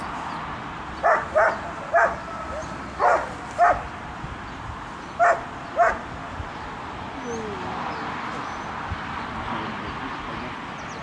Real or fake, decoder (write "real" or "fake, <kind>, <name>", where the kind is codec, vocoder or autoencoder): real